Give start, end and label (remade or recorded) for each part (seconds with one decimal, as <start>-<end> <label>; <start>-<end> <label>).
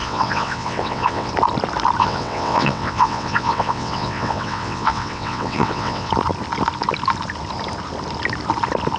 0.0-1.3 remade; 1.3-2.0 recorded; 2.0-6.1 remade; 6.1-9.0 recorded